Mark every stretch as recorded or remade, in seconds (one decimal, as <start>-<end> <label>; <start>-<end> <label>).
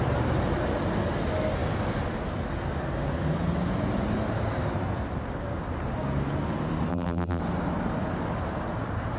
0.0-6.9 recorded; 6.9-7.4 remade; 7.4-9.2 recorded